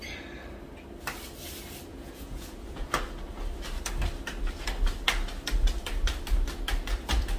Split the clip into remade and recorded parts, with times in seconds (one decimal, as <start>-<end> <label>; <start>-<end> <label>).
0.0-1.9 recorded; 1.9-2.9 remade; 2.9-7.4 recorded